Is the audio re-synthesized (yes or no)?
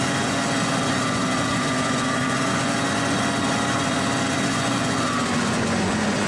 yes